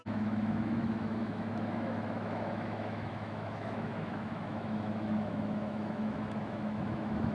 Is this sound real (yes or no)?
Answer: no